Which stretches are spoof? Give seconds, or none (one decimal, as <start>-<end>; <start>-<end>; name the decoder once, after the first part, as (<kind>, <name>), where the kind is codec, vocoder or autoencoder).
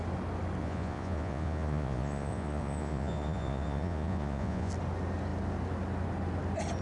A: 0.6-4.7 (vocoder, Vocos)